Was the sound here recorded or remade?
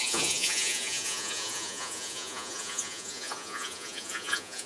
remade